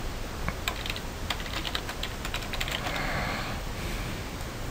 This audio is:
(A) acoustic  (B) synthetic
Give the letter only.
A